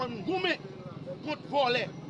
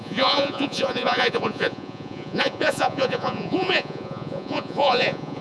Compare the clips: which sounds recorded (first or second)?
first